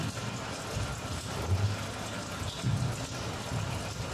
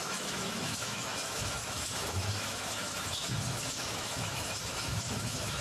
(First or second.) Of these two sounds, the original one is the first